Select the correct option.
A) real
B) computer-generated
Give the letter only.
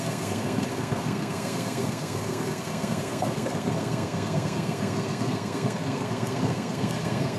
B